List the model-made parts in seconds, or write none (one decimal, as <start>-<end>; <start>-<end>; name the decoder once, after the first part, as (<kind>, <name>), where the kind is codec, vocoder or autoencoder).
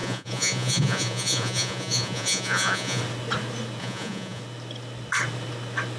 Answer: 0.0-3.0 (vocoder, Vocos); 3.8-4.4